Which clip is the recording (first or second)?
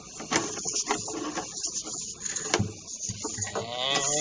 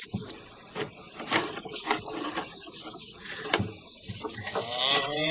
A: first